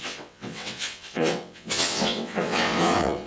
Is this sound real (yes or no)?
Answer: no